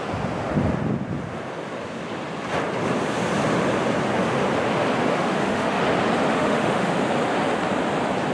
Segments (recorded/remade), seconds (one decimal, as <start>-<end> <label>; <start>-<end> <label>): 0.0-5.2 recorded; 5.2-5.8 remade; 5.8-6.3 recorded; 6.3-6.9 remade; 6.9-8.3 recorded

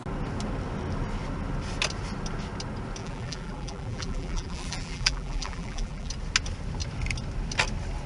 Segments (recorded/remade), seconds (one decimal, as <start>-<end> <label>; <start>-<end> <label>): 0.0-3.0 recorded; 3.0-6.1 remade; 6.1-8.1 recorded

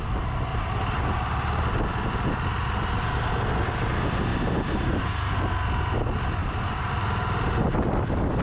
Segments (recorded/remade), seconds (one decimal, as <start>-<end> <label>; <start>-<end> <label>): 0.0-0.5 recorded; 0.5-1.0 remade; 1.0-4.3 recorded; 4.3-5.1 remade; 5.1-6.4 recorded; 6.4-6.9 remade; 6.9-8.4 recorded